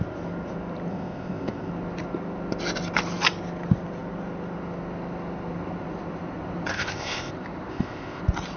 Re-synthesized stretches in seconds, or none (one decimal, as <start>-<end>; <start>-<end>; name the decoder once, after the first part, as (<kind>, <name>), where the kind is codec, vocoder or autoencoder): 0.9-1.7 (codec, ZipCodec); 6.7-7.3; 7.7-8.2

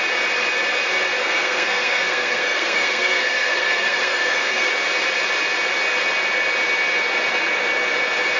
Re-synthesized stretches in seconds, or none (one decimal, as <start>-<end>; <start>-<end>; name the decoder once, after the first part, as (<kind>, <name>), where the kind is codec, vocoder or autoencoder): 1.2-4.7 (codec, SNAC)

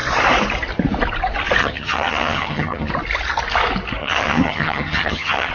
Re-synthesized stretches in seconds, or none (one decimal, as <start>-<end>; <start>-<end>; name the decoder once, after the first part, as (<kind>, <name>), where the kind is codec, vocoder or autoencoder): 1.6-2.9 (vocoder, HiFi-GAN); 4.0-5.5

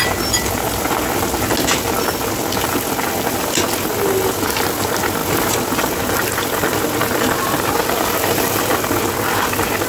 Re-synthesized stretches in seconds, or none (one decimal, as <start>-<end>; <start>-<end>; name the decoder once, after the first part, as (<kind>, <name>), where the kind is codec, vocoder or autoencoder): none

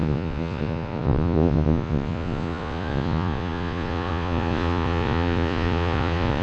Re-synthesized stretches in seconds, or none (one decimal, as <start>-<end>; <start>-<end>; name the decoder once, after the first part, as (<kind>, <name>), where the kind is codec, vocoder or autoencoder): 0.0-6.4 (vocoder, Vocos)

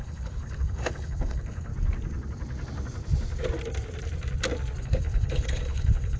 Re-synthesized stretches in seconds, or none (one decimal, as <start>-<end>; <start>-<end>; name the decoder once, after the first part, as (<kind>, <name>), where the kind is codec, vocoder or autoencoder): 0.0-1.7 (codec, HILCodec); 4.8-6.2